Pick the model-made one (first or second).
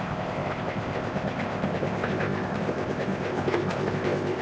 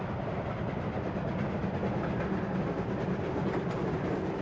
first